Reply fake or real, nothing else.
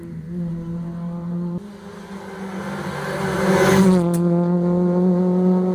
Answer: real